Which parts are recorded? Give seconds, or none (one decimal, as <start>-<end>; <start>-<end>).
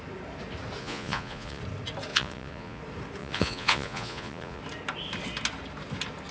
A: 0.0-0.8; 1.6-2.1; 2.8-3.2; 4.6-6.3